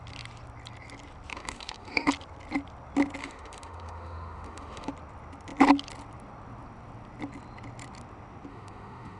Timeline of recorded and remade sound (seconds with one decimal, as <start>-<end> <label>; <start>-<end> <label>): 0.0-1.3 recorded; 1.3-2.1 remade; 2.1-3.2 recorded; 3.2-4.9 remade; 4.9-8.5 recorded; 8.5-9.2 remade